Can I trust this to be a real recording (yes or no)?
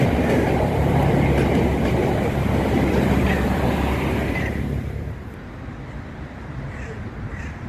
no